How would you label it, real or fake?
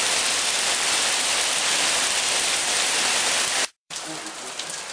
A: fake